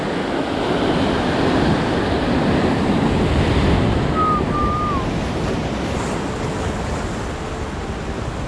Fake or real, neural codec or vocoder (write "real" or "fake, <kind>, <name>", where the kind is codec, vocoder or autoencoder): real